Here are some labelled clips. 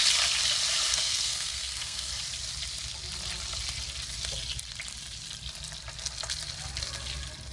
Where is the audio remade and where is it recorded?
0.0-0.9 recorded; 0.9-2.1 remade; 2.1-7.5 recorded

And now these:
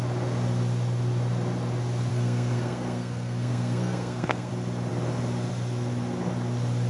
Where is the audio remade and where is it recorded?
0.0-2.1 recorded; 2.1-4.5 remade; 4.5-6.9 recorded

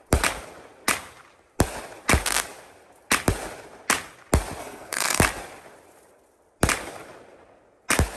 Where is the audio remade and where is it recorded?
0.0-4.6 recorded; 4.6-5.2 remade; 5.2-8.2 recorded

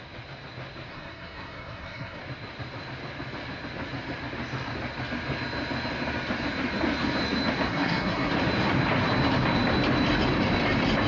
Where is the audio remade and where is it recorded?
0.0-0.9 recorded; 0.9-2.2 remade; 2.2-7.7 recorded; 7.7-8.3 remade; 8.3-11.1 recorded

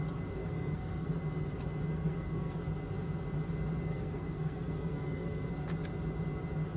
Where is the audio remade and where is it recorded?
0.0-0.4 recorded; 0.4-1.1 remade; 1.1-1.9 recorded; 1.9-2.6 remade; 2.6-3.9 recorded; 3.9-5.5 remade; 5.5-6.8 recorded